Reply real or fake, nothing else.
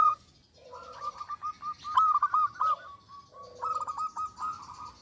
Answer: real